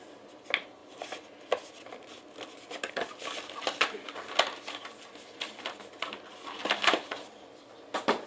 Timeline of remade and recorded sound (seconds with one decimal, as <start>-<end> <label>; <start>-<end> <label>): 0.0-8.3 recorded